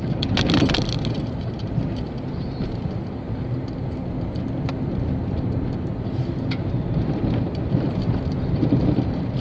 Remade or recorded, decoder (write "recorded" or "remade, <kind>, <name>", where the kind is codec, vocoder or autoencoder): recorded